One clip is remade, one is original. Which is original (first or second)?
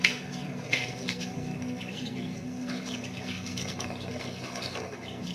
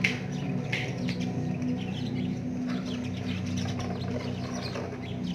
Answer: second